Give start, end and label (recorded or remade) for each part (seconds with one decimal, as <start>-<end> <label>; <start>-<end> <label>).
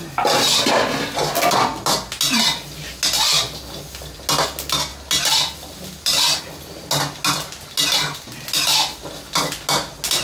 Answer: 0.0-10.2 recorded